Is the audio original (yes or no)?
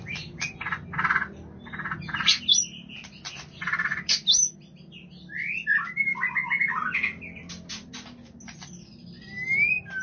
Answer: yes